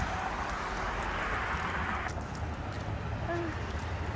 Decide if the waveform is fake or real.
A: real